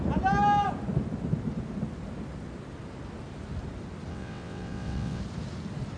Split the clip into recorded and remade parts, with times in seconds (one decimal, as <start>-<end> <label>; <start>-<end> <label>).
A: 0.0-4.1 recorded; 4.1-5.2 remade; 5.2-6.0 recorded